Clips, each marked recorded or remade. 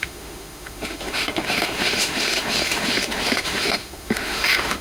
remade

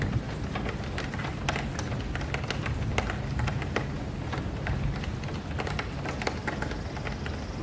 recorded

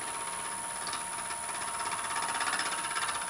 recorded